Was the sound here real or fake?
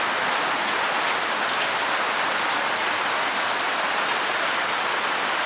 real